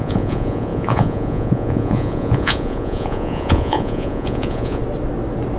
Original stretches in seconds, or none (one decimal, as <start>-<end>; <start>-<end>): 4.8-5.6